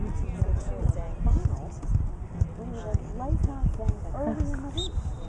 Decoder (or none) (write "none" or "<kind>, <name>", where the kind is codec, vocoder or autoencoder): none